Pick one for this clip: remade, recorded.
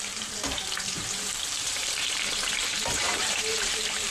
remade